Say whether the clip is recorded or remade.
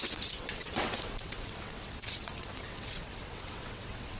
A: remade